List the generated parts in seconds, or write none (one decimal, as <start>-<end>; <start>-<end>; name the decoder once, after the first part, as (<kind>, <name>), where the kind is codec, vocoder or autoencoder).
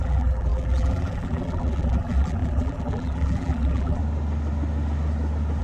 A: 0.0-4.0 (vocoder, BigVGAN v2)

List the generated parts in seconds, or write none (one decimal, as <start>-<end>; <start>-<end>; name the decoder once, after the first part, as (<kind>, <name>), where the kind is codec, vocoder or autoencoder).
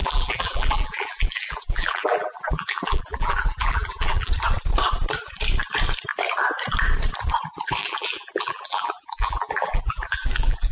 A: 0.0-4.3 (vocoder, BigVGAN v2); 7.8-10.7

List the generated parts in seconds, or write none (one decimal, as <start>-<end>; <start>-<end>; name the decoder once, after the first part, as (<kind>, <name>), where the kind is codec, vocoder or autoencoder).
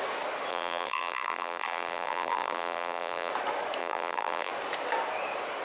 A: 0.5-3.3 (vocoder, BigVGAN v2); 3.8-4.5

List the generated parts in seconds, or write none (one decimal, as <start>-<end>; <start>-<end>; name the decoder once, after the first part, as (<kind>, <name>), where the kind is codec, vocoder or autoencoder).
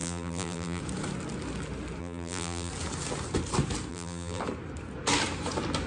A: 0.0-0.8 (vocoder, BigVGAN v2); 2.0-2.7; 3.9-4.4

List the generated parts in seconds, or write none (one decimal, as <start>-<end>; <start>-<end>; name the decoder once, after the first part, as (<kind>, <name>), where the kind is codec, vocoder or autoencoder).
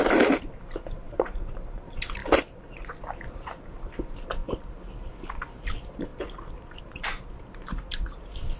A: 0.0-2.2 (vocoder, BigVGAN v2); 3.3-4.4; 5.0-8.6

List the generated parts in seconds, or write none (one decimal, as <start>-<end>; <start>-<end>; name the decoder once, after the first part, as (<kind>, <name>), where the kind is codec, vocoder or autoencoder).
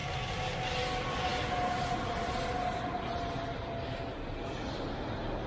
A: none